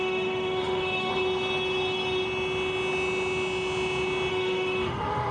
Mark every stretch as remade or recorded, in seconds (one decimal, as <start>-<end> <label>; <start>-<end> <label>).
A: 0.0-1.1 remade; 1.1-4.3 recorded; 4.3-5.3 remade